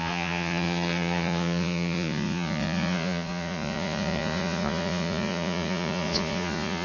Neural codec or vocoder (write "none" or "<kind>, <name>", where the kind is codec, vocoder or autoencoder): vocoder, Vocos